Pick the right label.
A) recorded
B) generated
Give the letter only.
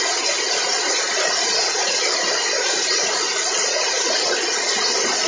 A